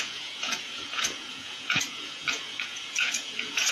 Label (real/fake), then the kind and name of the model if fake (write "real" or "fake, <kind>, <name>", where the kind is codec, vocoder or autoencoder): fake, vocoder, Vocos